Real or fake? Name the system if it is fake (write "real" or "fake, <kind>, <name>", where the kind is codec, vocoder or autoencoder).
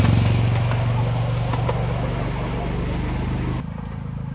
real